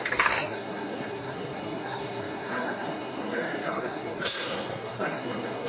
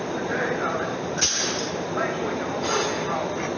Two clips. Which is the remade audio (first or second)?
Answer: first